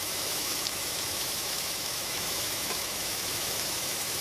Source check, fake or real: fake